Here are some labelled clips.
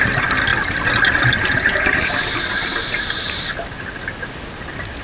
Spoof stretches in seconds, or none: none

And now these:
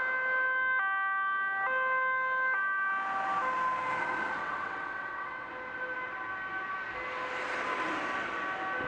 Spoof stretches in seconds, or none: 4.4-5.5 (vocoder, WaveNeXt)

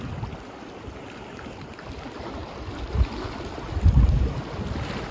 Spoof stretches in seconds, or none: none

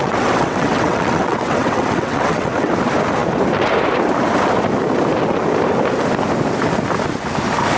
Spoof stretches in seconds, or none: 0.0-2.7 (vocoder, WaveNeXt)

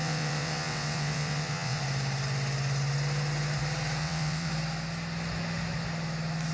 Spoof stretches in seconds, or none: 0.0-1.8 (vocoder, WaveNeXt); 4.0-4.5

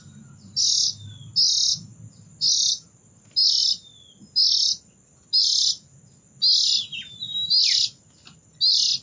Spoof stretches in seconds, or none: none

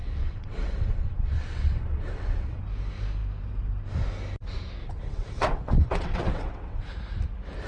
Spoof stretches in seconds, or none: 0.0-2.6 (vocoder, WaveNeXt); 4.8-6.8

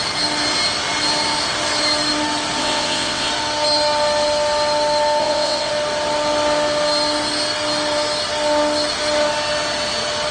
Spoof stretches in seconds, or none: 2.6-3.3 (vocoder, WaveNeXt); 5.2-5.7